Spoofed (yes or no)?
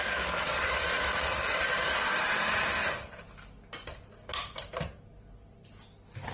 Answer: no